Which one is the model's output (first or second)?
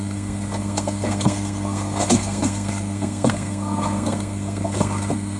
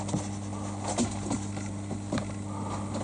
first